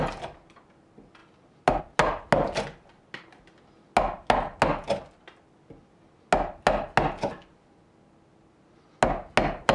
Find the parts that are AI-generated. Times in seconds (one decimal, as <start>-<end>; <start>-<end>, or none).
none